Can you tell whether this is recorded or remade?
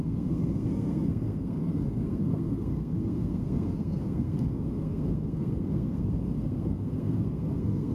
remade